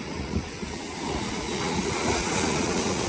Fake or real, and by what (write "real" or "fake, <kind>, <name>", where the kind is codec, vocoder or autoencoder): fake, vocoder, Vocos